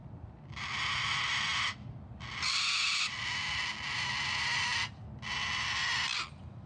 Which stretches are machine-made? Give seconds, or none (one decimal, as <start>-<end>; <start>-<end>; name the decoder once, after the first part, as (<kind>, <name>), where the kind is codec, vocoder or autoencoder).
0.0-0.6 (vocoder, BigVGAN v2); 1.7-3.2